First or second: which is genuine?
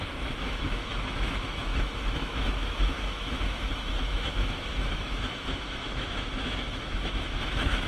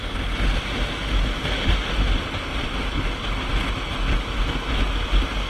second